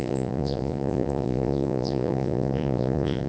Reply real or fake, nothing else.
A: fake